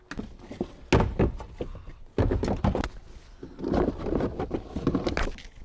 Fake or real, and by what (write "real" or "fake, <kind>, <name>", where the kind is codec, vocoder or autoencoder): real